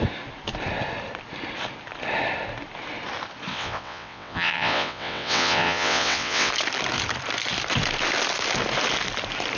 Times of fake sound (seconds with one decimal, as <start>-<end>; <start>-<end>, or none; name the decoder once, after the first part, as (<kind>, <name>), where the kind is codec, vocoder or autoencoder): 3.5-6.5 (vocoder, WaveNeXt)

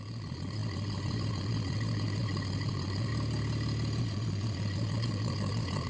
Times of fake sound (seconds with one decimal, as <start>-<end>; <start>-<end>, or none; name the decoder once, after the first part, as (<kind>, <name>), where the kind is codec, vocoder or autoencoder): 0.0-3.1 (vocoder, Vocos); 4.0-5.9

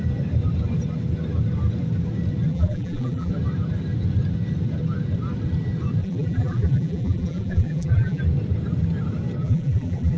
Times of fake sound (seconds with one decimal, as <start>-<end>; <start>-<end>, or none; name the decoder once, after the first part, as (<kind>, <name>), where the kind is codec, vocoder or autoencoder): 2.5-3.3 (vocoder, BigVGAN v2); 6.0-8.2; 9.4-10.2

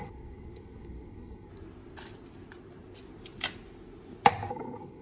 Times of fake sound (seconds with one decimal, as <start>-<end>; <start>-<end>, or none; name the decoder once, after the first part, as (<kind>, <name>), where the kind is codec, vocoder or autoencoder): 0.0-1.5 (codec, SNAC); 4.5-5.0

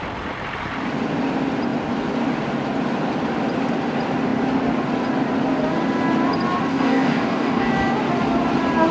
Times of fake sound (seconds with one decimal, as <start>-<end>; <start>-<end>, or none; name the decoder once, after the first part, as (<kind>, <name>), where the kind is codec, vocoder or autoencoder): 6.7-7.7 (codec, DAC)

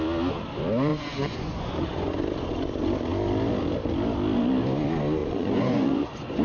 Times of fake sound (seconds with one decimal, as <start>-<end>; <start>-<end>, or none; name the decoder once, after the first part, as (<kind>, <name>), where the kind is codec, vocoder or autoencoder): 0.9-2.2 (vocoder, Vocos); 5.2-6.4

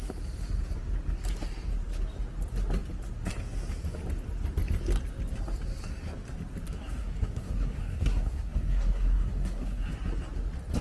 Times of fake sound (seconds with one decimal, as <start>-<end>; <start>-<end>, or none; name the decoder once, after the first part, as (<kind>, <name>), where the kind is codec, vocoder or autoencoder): 6.8-9.9 (codec, SNAC)

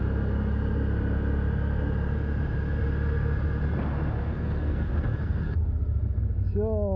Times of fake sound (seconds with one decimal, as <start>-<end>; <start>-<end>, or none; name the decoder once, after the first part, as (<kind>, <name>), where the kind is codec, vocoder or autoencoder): 4.2-6.2 (codec, SNAC)